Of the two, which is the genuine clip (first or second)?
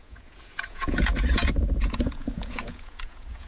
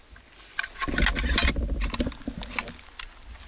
second